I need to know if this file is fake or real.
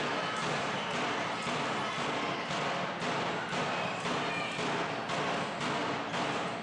real